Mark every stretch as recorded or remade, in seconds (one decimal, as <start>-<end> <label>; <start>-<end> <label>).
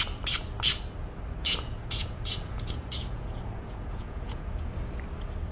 0.0-1.4 recorded; 1.4-4.7 remade; 4.7-5.5 recorded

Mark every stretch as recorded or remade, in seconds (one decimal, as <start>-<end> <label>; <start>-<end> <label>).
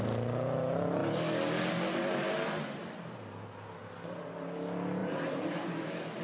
0.0-5.0 recorded; 5.0-6.2 remade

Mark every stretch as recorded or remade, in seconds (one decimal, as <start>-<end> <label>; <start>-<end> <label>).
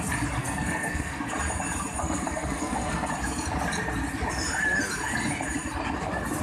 0.0-0.4 recorded; 0.4-1.3 remade; 1.3-2.0 recorded; 2.0-3.1 remade; 3.1-6.4 recorded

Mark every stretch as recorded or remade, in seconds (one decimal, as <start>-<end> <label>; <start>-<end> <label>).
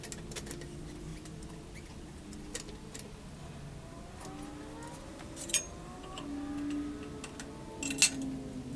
0.0-5.1 recorded; 5.1-6.2 remade; 6.2-8.8 recorded